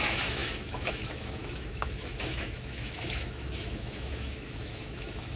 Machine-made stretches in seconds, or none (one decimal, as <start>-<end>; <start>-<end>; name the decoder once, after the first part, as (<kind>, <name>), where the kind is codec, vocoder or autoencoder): 0.0-5.4 (autoencoder, DAC-VAE)